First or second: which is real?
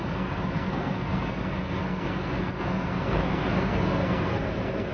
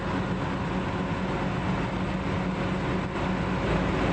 second